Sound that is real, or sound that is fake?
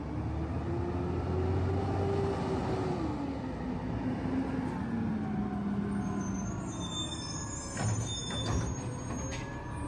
real